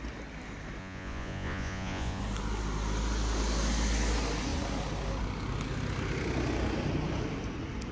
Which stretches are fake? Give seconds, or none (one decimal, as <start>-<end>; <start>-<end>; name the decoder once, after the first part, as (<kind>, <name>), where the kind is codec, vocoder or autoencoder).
0.8-2.2 (vocoder, Vocos)